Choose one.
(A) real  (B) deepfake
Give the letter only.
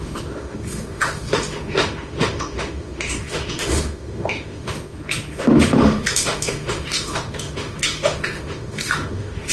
B